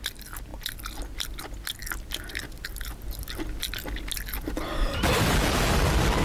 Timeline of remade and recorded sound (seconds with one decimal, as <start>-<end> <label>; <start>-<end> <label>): 0.0-6.2 recorded